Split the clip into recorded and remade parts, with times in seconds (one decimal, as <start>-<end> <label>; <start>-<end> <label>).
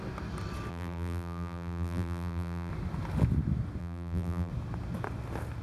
0.0-0.7 recorded; 0.7-2.7 remade; 2.7-3.8 recorded; 3.8-4.5 remade; 4.5-5.6 recorded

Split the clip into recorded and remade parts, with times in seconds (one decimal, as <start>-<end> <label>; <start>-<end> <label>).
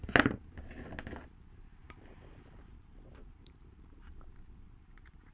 0.0-1.8 recorded; 1.8-5.3 remade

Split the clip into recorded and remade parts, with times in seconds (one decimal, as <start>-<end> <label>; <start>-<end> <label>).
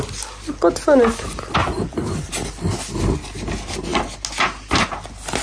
0.0-5.4 recorded